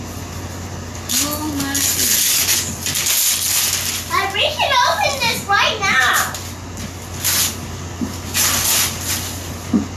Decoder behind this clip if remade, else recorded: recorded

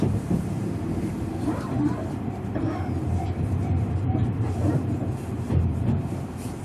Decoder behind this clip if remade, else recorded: remade, vocoder, BigVGAN v2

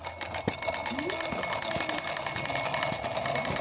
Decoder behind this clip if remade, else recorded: recorded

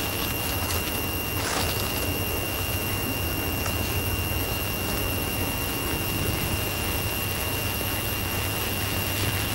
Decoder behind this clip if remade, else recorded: remade, autoencoder, DAC-VAE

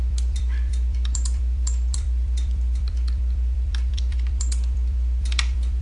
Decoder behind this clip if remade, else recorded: remade, vocoder, BigVGAN v2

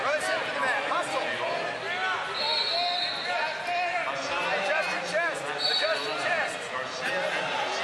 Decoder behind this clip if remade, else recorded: recorded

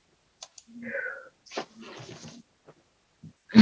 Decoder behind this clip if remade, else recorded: recorded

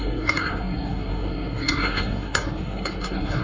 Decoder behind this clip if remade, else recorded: remade, codec, SNAC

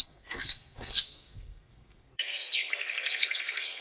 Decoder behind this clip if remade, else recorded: remade, codec, SNAC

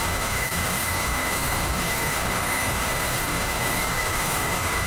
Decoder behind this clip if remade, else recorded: remade, codec, DAC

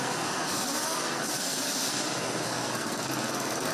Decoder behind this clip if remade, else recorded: remade, codec, SNAC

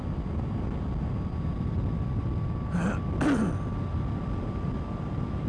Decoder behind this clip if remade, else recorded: recorded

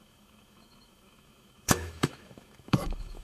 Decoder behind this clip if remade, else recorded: remade, autoencoder, DAC-VAE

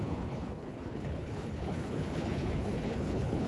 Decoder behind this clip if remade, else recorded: remade, codec, HILCodec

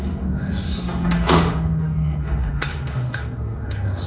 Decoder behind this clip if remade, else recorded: remade, autoencoder, DAC-VAE